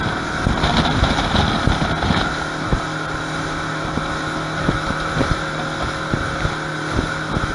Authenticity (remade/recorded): recorded